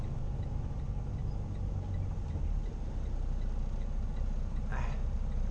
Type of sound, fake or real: real